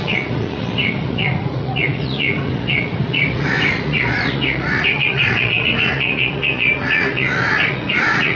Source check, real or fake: fake